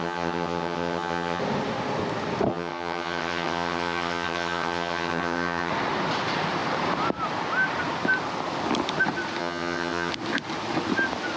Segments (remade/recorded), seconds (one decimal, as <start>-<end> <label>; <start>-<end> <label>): 0.0-1.4 remade; 1.4-2.5 recorded; 2.5-5.7 remade; 5.7-9.4 recorded; 9.4-10.1 remade; 10.1-11.4 recorded